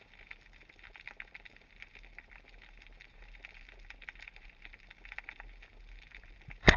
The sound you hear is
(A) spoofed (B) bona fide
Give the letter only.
B